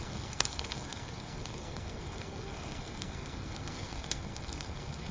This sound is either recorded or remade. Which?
remade